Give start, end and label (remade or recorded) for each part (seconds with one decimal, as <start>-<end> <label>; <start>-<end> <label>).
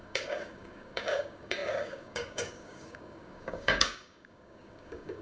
0.0-5.2 remade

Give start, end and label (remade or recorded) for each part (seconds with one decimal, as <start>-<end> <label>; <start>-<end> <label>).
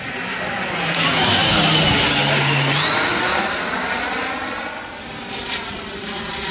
0.0-1.4 remade; 1.4-5.3 recorded; 5.3-6.5 remade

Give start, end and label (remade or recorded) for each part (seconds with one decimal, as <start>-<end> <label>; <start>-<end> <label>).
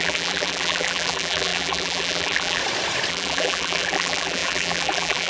0.0-2.6 remade; 2.6-3.1 recorded; 3.1-5.3 remade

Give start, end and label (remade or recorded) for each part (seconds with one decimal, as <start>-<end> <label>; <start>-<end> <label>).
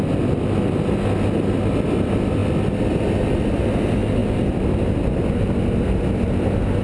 0.0-6.8 recorded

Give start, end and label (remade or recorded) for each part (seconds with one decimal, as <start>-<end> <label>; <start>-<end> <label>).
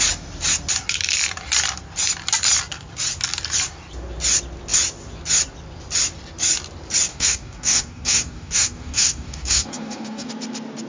0.0-7.1 recorded; 7.1-10.3 remade; 10.3-10.9 recorded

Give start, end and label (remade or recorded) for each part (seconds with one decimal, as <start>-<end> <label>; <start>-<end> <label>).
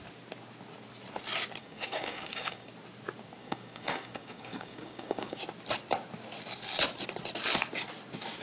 0.0-1.6 recorded; 1.6-2.7 remade; 2.7-3.4 recorded; 3.4-5.4 remade; 5.4-8.4 recorded